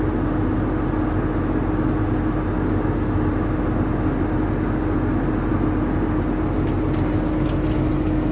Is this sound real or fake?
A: real